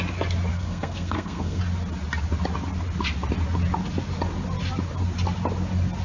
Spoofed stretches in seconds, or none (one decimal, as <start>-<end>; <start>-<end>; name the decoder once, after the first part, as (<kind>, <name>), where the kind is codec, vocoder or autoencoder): 0.5-1.6 (codec, SNAC)